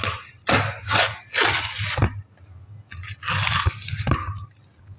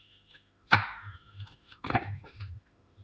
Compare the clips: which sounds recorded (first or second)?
first